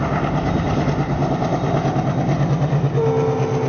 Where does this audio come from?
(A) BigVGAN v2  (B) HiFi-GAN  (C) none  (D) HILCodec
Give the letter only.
C